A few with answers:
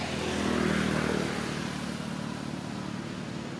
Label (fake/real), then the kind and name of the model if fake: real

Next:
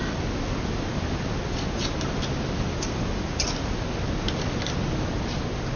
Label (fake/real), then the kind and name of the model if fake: real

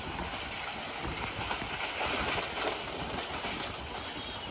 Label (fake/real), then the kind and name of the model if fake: real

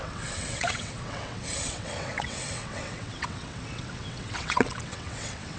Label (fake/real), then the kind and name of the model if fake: fake, vocoder, WaveNeXt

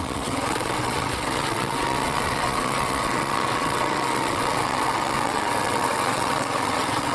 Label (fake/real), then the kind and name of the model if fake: fake, vocoder, WaveNeXt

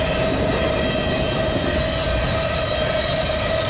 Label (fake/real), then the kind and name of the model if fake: real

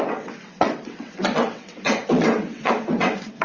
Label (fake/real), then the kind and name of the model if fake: fake, vocoder, WaveNeXt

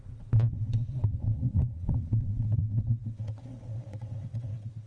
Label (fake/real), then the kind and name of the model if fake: fake, vocoder, WaveNeXt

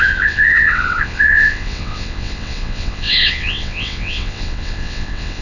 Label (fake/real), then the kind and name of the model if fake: fake, vocoder, WaveNeXt